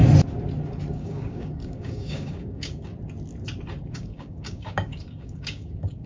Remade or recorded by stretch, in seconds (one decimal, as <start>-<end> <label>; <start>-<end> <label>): 0.0-0.9 recorded; 0.9-2.9 remade; 2.9-3.9 recorded; 3.9-6.1 remade